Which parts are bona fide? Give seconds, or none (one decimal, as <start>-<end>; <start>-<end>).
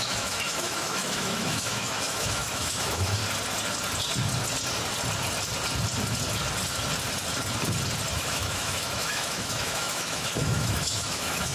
3.2-8.1